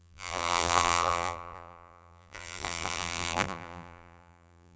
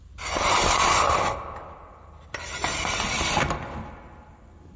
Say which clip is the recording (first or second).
second